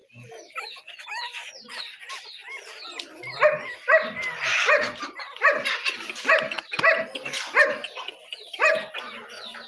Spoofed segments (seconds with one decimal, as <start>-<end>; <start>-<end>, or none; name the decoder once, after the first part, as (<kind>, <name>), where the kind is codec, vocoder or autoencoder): none